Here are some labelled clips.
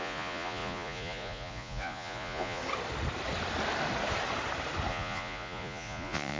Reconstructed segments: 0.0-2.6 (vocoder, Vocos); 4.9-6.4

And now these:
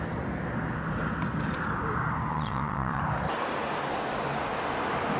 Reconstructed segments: 2.3-3.0 (vocoder, Vocos)

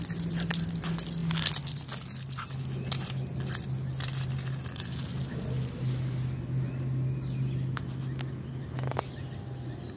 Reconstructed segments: none

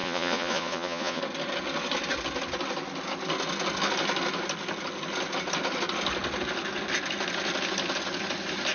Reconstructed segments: 0.0-1.2 (vocoder, Vocos)

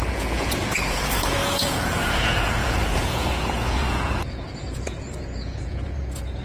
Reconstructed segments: 0.0-6.4 (vocoder, Vocos)